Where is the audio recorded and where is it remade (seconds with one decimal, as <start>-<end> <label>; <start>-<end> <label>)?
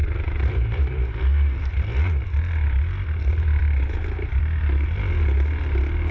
0.0-1.2 remade; 1.2-6.1 recorded